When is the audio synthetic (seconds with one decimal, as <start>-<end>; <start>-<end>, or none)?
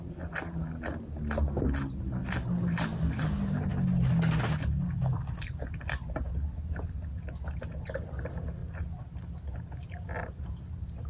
none